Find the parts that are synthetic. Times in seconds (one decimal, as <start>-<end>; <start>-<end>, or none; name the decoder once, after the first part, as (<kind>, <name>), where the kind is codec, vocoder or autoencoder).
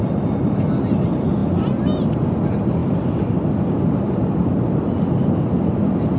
none